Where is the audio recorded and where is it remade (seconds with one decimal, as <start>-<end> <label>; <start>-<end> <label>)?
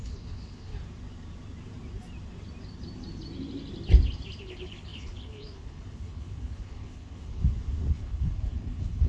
0.0-0.7 remade; 0.7-4.4 recorded; 4.4-7.4 remade; 7.4-7.9 recorded; 7.9-9.1 remade